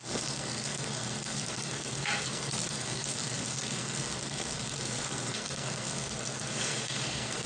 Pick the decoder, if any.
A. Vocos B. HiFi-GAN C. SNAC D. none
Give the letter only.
C